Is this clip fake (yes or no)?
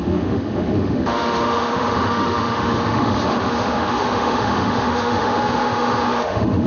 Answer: yes